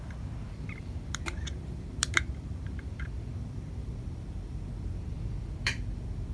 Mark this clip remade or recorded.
remade